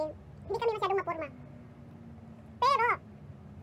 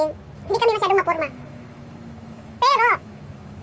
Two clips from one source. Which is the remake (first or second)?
second